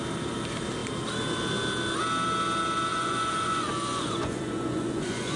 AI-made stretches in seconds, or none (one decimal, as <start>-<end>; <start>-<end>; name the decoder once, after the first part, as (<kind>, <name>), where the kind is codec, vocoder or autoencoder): 2.9-5.4 (vocoder, Vocos)